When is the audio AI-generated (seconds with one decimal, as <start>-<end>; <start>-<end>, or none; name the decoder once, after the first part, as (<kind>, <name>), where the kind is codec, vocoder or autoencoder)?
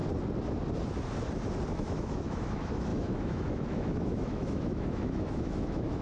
1.7-6.0 (autoencoder, DAC-VAE)